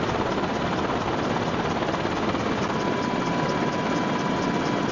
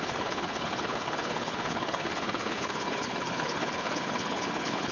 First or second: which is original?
first